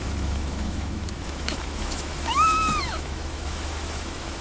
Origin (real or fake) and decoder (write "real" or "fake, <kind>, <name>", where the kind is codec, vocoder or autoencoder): fake, autoencoder, DAC-VAE